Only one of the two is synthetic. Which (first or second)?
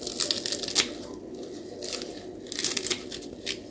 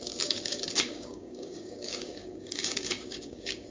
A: second